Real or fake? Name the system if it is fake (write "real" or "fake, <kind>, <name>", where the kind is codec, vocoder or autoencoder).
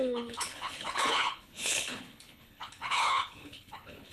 fake, codec, HILCodec